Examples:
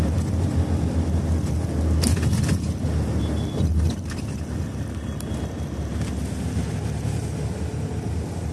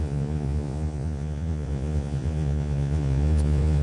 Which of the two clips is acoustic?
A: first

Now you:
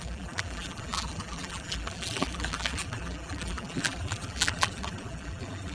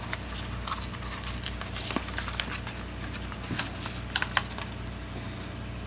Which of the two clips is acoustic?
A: second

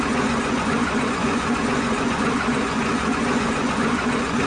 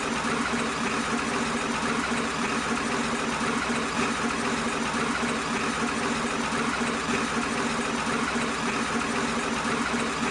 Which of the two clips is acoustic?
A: second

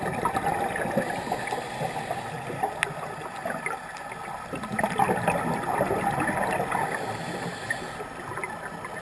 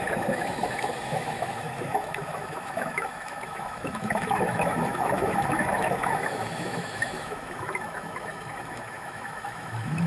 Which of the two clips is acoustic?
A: first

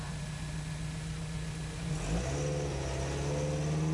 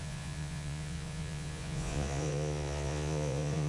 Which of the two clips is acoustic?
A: first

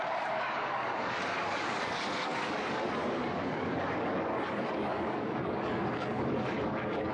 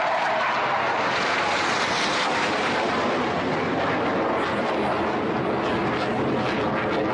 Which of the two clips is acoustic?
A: second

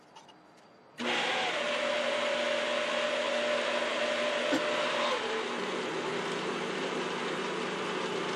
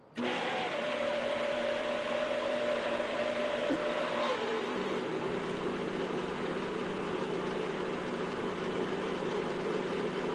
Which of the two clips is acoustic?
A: first